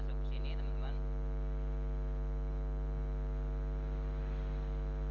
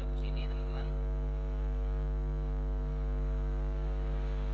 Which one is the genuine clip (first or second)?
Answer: first